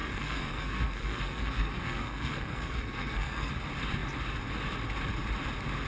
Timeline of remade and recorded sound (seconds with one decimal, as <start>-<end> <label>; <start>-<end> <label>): 0.0-3.5 remade; 3.5-5.9 recorded